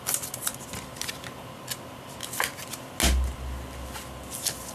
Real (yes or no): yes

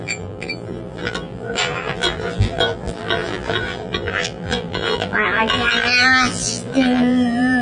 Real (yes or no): no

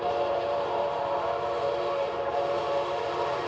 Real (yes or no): no